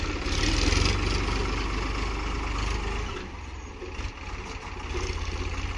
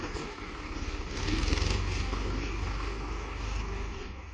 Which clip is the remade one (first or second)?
second